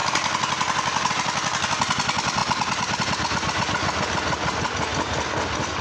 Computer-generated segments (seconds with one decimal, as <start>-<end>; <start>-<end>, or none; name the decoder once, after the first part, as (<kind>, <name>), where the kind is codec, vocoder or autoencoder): none